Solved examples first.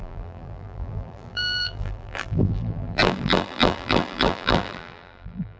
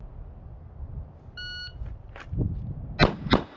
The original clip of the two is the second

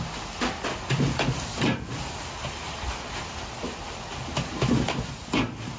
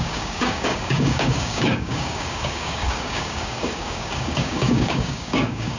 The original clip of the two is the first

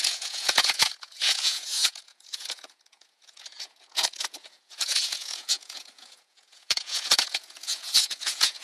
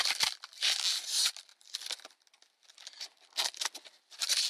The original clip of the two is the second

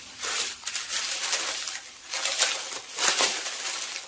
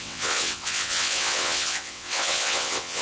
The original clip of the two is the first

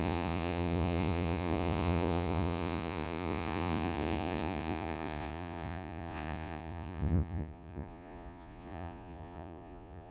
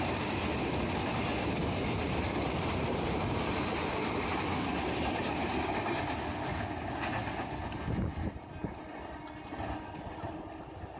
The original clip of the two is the second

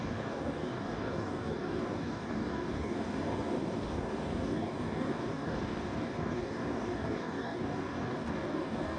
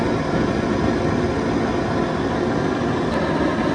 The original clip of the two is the second